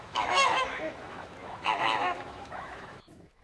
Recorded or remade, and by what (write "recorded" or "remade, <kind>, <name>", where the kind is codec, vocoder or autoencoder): remade, autoencoder, DAC-VAE